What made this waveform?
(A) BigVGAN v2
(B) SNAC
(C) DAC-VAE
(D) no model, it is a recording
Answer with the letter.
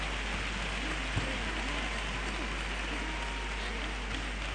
D